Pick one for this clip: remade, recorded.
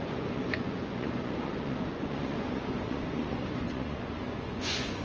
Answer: remade